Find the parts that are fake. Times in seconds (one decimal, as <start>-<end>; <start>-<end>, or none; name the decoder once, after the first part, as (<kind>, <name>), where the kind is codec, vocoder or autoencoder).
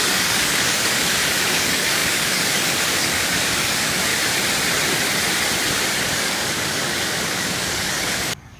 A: 0.0-4.1 (codec, DAC); 6.0-8.6